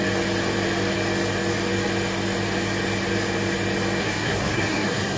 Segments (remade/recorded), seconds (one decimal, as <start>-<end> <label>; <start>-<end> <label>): 0.0-4.0 recorded; 4.0-5.2 remade